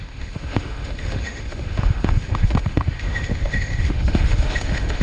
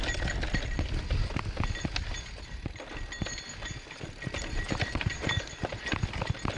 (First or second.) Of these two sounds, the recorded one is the second